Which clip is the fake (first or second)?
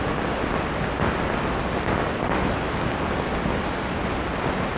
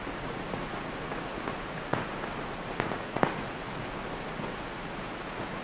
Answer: second